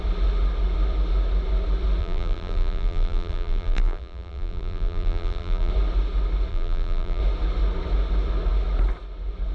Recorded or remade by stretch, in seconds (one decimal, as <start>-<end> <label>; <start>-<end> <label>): 0.0-2.0 recorded; 2.0-5.7 remade; 5.7-6.5 recorded; 6.5-7.2 remade; 7.2-9.5 recorded